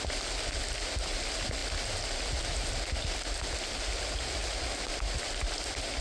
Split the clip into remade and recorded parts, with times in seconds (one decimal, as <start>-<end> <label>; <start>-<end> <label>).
0.0-6.0 recorded